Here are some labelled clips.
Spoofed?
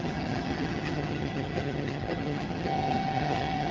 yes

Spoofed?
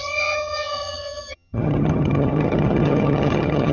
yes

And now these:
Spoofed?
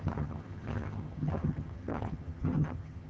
yes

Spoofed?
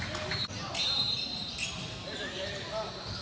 no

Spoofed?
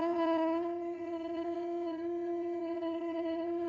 yes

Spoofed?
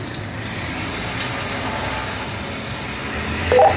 no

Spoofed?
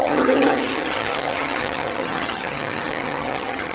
yes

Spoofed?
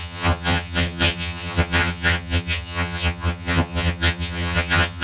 yes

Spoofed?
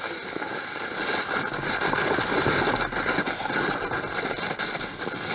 no